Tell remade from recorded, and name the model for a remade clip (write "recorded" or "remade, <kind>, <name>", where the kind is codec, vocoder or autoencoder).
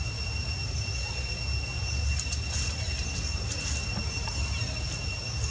recorded